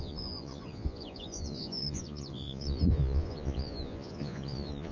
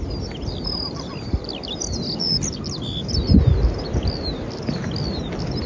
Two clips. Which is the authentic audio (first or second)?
second